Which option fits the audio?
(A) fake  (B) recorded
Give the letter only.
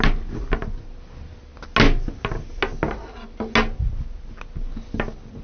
B